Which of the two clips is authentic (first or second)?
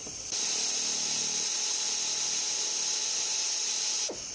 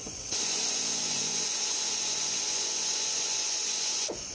first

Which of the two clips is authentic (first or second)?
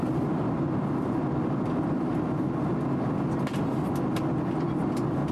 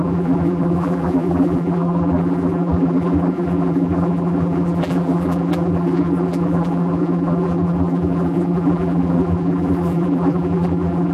first